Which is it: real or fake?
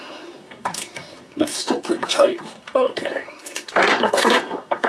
fake